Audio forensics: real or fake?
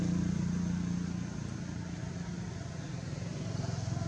real